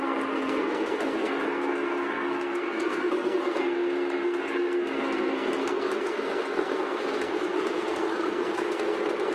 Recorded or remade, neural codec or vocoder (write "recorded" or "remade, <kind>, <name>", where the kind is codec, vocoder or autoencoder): remade, codec, SNAC